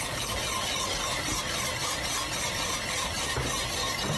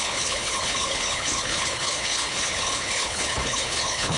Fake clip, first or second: second